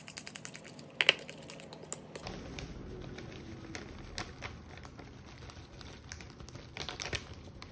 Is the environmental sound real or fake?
real